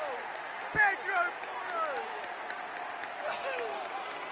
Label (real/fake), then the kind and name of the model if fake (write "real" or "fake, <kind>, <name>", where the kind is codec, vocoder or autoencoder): real